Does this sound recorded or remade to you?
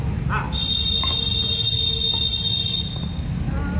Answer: recorded